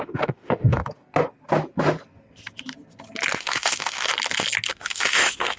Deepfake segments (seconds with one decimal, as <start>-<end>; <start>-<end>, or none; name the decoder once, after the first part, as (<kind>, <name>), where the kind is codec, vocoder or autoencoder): 0.0-0.8 (autoencoder, DAC-VAE); 3.4-4.1; 4.7-5.6